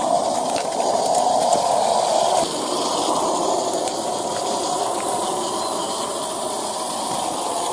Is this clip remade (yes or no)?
no